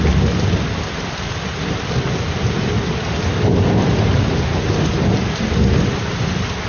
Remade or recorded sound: recorded